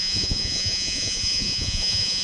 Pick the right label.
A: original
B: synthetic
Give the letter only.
B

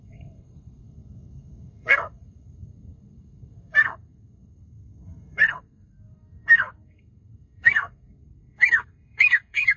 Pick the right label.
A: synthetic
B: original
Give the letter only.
A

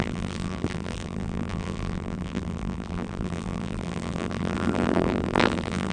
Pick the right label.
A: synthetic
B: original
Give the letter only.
A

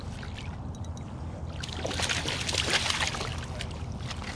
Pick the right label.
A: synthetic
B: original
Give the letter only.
B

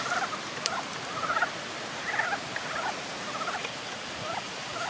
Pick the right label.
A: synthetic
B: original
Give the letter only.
B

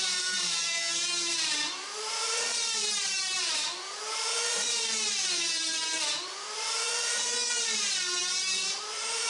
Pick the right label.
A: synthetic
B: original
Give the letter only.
A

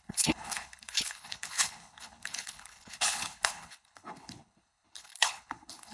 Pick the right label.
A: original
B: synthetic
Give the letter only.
B